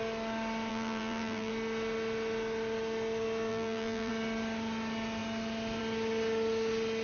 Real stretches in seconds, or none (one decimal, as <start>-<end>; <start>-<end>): 0.0-0.7; 1.5-3.5; 4.1-7.0